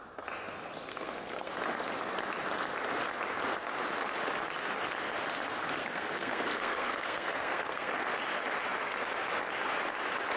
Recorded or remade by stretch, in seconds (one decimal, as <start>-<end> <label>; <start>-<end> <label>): 0.0-0.9 recorded; 0.9-1.5 remade; 1.5-5.8 recorded; 5.8-7.9 remade; 7.9-10.4 recorded